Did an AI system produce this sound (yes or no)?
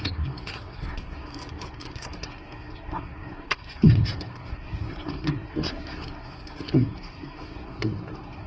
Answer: yes